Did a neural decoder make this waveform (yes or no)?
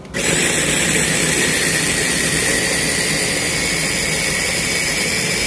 no